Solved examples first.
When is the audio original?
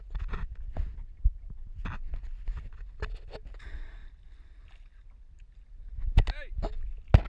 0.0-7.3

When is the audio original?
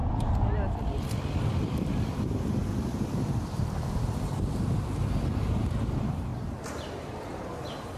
0.0-2.7; 4.6-8.0